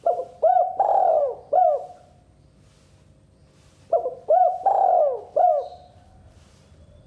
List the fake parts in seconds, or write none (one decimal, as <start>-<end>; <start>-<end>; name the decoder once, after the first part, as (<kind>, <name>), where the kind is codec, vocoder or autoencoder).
0.9-1.5 (vocoder, BigVGAN v2)